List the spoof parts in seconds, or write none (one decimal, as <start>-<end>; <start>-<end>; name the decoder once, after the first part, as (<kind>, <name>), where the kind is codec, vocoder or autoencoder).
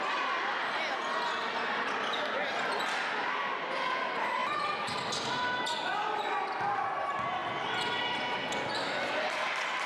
none